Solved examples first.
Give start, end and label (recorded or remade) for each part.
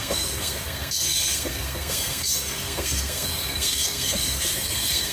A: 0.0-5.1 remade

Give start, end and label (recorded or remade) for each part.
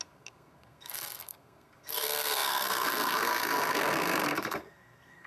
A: 0.0-5.3 remade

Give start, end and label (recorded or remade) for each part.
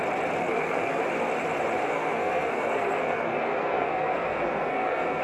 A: 0.0-0.4 recorded; 0.4-1.0 remade; 1.0-1.8 recorded; 1.8-5.2 remade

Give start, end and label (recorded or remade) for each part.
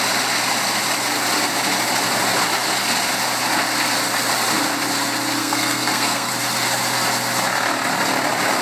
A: 0.0-5.4 recorded; 5.4-6.3 remade; 6.3-8.6 recorded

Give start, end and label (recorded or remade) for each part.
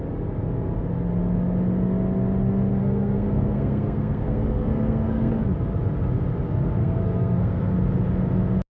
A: 0.0-2.8 recorded; 2.8-5.3 remade; 5.3-6.8 recorded; 6.8-7.7 remade; 7.7-8.7 recorded